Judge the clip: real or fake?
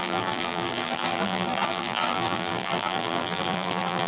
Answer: fake